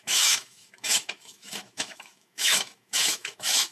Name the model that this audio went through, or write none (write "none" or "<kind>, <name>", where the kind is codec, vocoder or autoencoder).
autoencoder, DAC-VAE